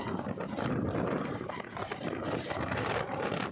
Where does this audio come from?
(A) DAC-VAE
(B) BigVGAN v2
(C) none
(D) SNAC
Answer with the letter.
B